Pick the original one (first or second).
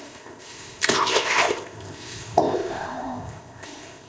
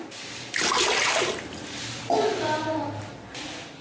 second